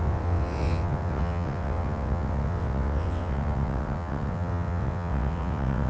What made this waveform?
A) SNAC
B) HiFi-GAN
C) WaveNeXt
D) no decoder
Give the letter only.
C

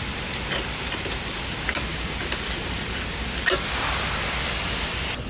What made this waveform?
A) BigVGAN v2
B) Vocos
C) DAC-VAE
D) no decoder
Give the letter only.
D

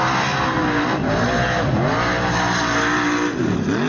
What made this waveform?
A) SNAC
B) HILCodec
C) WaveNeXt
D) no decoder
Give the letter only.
D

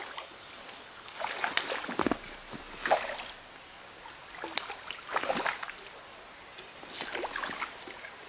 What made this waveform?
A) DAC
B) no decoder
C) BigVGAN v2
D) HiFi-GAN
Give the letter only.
B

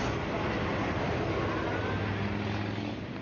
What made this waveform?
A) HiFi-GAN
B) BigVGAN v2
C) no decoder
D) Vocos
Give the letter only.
C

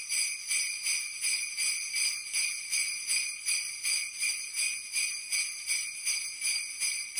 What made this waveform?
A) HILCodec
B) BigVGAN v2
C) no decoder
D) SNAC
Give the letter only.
C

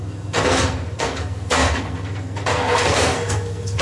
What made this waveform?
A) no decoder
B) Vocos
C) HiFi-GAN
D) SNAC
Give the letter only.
D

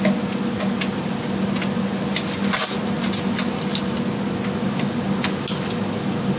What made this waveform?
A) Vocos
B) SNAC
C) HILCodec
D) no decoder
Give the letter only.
D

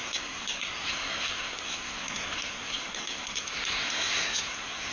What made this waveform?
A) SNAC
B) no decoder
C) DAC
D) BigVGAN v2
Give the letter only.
A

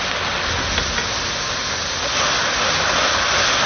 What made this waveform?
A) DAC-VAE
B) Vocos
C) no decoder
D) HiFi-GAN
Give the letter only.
C